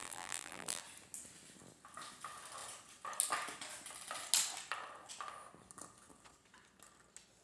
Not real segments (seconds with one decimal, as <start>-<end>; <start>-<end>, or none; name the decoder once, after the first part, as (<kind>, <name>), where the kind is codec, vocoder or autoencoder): 0.0-0.8 (vocoder, BigVGAN v2)